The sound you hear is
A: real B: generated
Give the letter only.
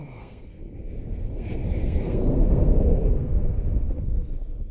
B